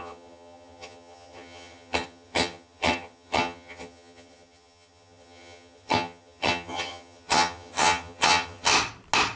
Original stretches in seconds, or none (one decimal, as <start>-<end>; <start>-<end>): 8.7-9.4